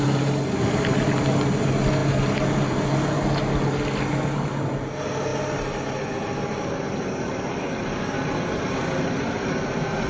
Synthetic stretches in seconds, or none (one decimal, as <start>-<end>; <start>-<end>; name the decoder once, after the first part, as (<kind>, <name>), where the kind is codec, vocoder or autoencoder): none